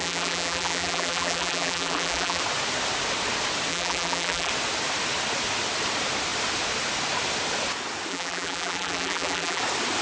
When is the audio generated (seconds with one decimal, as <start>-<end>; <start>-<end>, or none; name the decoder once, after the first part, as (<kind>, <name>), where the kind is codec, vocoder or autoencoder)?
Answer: 0.0-2.4 (vocoder, BigVGAN v2); 3.7-4.5; 8.1-9.6